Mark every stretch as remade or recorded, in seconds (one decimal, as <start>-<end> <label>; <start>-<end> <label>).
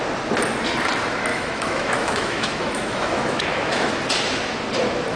0.0-1.3 recorded; 1.3-3.9 remade; 3.9-5.2 recorded